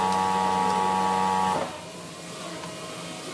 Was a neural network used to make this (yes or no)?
no